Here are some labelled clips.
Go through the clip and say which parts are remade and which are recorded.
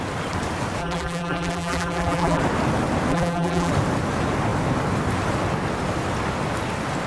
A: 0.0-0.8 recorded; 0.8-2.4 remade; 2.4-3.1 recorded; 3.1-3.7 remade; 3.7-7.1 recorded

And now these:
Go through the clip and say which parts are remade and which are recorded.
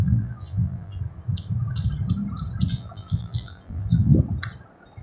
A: 0.0-1.0 remade; 1.0-2.7 recorded; 2.7-4.2 remade; 4.2-5.0 recorded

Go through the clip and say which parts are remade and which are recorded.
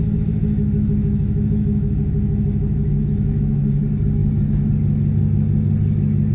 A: 0.0-3.8 remade; 3.8-4.2 recorded; 4.2-4.7 remade; 4.7-6.3 recorded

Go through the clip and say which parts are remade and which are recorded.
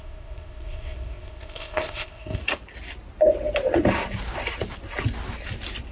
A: 0.0-2.4 remade; 2.4-5.9 recorded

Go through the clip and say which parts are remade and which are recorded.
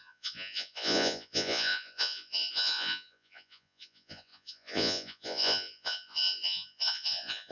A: 0.0-7.5 remade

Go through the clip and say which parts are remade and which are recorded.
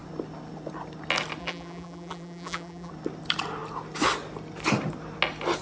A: 0.0-1.4 recorded; 1.4-2.9 remade; 2.9-5.6 recorded